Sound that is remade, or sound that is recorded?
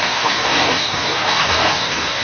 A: remade